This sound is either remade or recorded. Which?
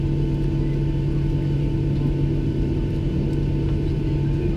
recorded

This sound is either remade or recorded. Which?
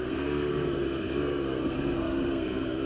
remade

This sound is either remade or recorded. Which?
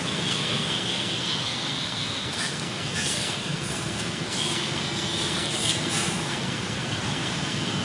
remade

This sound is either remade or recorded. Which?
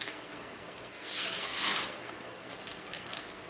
remade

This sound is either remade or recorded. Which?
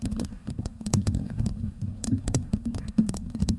remade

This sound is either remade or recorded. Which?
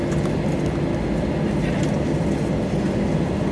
recorded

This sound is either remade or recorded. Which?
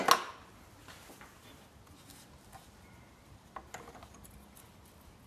recorded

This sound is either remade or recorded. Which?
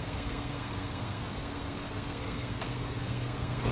remade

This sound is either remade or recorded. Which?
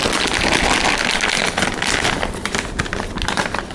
recorded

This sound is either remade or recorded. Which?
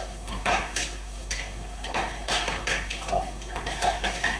remade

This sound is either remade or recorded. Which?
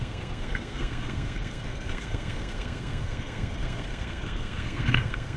remade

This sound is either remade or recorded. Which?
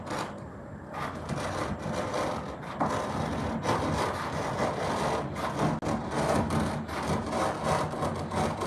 recorded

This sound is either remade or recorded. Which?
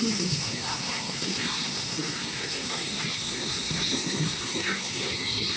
remade